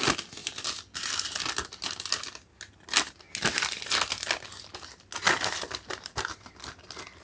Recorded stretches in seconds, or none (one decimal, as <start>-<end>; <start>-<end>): 0.0-7.2